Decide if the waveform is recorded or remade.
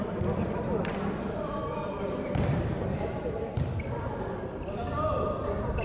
remade